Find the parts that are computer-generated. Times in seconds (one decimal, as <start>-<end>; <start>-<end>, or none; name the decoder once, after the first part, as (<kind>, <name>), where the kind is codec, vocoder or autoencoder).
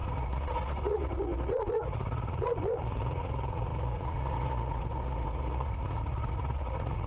0.0-7.1 (vocoder, Vocos)